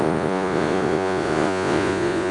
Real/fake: fake